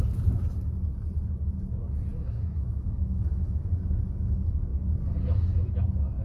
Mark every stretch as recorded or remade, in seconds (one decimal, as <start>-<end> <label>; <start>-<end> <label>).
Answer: 0.0-2.1 recorded; 2.1-3.7 remade; 3.7-6.2 recorded